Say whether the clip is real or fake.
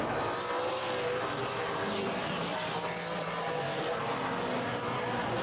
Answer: real